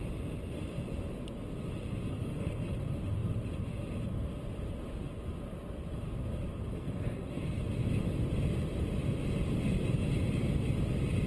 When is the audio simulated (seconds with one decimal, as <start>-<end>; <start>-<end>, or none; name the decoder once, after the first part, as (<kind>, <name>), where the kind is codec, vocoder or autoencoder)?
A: 2.2-2.7 (codec, SNAC); 6.7-7.6

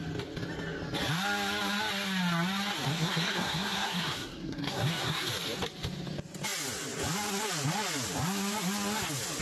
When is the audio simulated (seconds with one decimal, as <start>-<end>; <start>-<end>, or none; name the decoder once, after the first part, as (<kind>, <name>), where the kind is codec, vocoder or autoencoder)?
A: 2.9-5.3 (codec, SNAC)

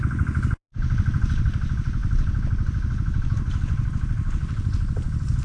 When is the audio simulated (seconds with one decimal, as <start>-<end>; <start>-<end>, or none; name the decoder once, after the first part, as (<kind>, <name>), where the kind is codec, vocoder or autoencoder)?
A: none

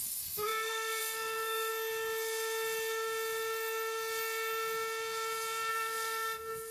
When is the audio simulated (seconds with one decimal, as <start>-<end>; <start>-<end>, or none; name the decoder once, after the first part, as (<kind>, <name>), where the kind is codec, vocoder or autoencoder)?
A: 0.0-1.7 (codec, SNAC); 5.7-6.7